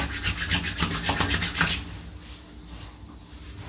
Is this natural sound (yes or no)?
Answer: yes